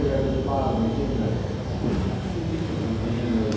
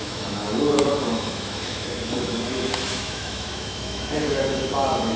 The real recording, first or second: first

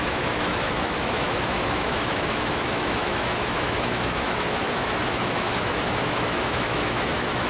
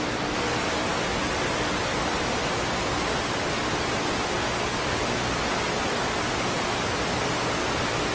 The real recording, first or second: second